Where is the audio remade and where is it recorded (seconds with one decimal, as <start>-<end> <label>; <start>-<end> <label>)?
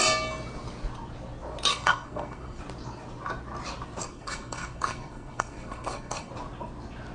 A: 0.0-1.7 recorded; 1.7-2.6 remade; 2.6-4.0 recorded; 4.0-6.3 remade; 6.3-7.1 recorded